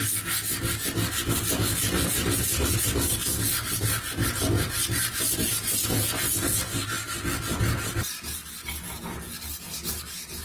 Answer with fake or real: real